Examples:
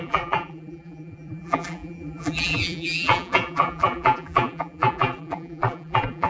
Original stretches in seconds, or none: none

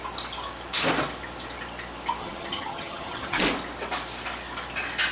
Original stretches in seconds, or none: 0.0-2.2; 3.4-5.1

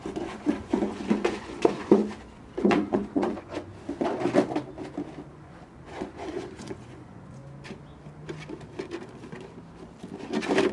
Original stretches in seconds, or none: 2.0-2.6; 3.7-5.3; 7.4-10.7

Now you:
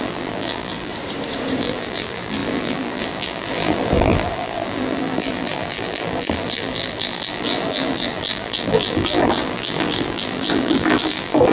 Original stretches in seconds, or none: 0.9-1.6

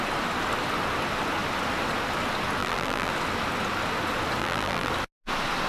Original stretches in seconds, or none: 0.0-2.6; 3.1-4.4; 4.9-5.7

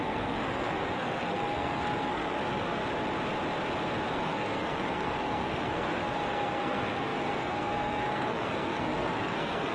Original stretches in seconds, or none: 2.8-4.1

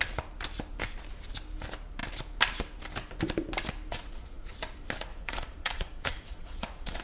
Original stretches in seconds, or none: 0.0-3.9; 4.5-5.1